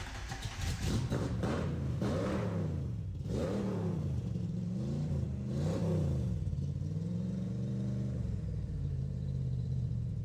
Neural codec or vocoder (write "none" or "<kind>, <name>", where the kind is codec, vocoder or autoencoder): vocoder, BigVGAN v2